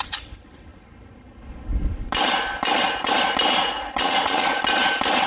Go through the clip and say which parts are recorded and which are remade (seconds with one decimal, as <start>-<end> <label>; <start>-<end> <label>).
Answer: 0.0-3.6 recorded; 3.6-4.6 remade; 4.6-5.3 recorded